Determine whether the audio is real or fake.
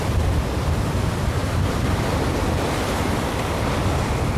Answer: real